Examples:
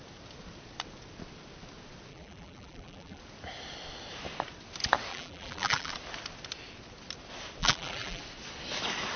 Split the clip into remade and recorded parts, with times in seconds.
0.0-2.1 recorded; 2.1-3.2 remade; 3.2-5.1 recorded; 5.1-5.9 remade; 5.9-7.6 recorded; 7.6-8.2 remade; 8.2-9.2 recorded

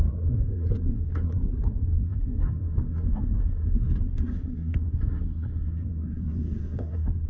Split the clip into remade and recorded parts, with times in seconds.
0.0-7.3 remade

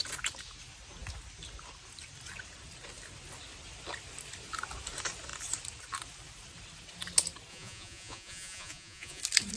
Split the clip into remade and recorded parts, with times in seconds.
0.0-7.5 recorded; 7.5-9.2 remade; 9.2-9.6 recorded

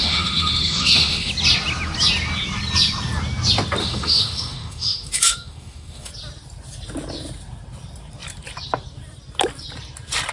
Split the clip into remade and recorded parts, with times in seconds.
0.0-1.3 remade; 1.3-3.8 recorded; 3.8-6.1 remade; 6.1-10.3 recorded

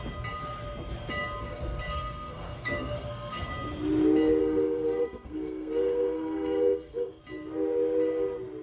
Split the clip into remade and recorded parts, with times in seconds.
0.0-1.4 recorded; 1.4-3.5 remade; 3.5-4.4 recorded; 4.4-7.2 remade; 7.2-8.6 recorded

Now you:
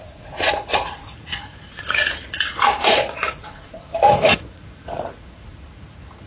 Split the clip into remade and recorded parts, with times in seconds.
0.0-6.3 remade